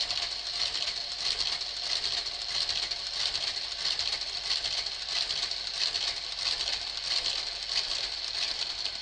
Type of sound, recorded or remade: recorded